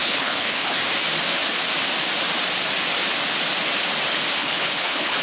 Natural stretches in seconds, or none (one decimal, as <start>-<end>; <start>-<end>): 0.8-4.4